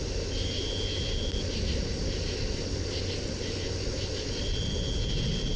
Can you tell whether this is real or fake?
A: real